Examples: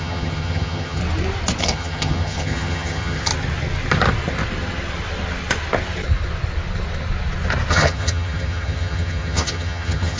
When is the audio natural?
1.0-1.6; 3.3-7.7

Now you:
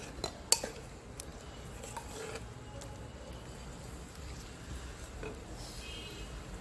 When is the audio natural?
0.0-6.6

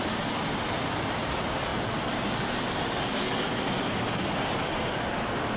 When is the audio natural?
0.0-5.6

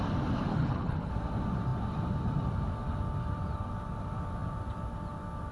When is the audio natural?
0.0-0.5; 1.1-5.5